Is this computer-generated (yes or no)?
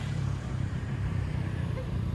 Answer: yes